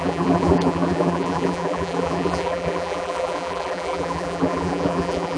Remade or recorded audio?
remade